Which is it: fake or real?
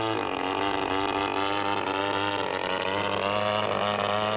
real